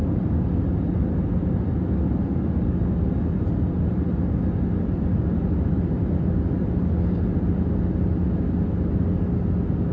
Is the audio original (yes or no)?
yes